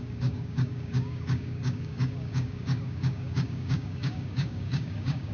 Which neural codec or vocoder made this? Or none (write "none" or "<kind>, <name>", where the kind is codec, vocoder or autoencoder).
codec, DAC